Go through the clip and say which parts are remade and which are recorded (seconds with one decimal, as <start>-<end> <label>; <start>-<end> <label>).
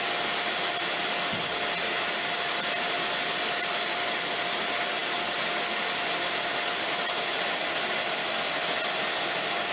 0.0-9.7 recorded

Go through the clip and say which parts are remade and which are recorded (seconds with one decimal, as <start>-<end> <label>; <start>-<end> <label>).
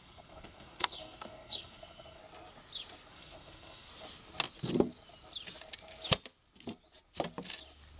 0.0-2.2 remade; 2.2-3.1 recorded; 3.1-3.9 remade; 3.9-8.0 recorded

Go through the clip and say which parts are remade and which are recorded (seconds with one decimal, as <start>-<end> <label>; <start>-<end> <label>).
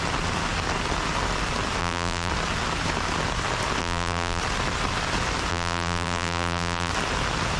0.0-1.8 recorded; 1.8-2.3 remade; 2.3-3.8 recorded; 3.8-4.4 remade; 4.4-5.5 recorded; 5.5-6.9 remade; 6.9-7.6 recorded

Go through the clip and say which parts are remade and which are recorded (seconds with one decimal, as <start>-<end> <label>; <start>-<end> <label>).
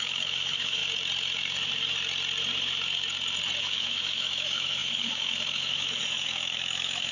0.0-0.8 remade; 0.8-3.6 recorded; 3.6-7.1 remade